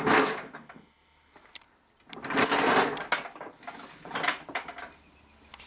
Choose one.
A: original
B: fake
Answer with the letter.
A